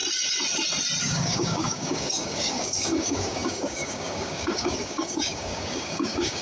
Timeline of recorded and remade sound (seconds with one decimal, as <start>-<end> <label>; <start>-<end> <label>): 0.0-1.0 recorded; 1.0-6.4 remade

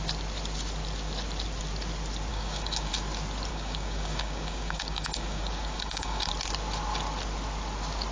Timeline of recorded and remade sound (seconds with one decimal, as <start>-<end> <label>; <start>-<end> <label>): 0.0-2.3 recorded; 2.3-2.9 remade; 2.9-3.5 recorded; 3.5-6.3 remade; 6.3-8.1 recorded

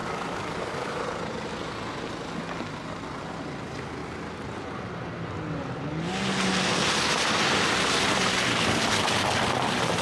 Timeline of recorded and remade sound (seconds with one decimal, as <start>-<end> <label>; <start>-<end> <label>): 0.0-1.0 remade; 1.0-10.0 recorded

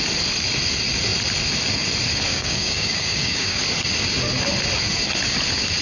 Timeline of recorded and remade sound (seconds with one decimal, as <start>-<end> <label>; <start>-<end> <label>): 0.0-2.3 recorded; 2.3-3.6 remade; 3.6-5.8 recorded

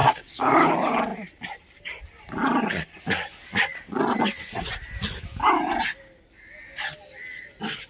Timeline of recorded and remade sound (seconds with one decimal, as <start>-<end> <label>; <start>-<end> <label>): 0.0-0.7 remade; 0.7-7.9 recorded

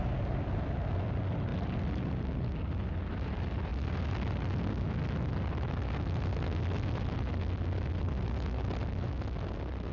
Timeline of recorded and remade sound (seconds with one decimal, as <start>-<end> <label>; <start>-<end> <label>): 0.0-9.9 recorded